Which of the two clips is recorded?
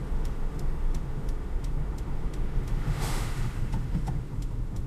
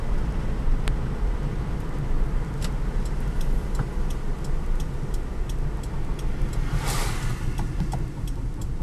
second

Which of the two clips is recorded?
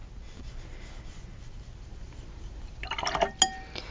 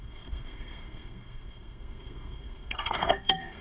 first